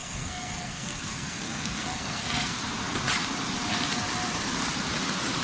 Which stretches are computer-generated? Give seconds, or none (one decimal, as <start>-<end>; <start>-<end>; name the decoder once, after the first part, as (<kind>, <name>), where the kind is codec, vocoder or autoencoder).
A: 0.0-2.6 (codec, SNAC)